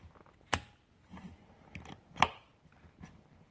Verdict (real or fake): real